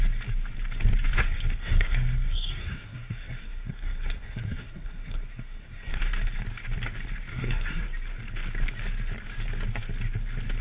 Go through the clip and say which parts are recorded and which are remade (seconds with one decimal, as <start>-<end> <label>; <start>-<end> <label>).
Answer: 0.0-1.2 recorded; 1.2-6.0 remade; 6.0-7.3 recorded; 7.3-7.8 remade; 7.8-10.6 recorded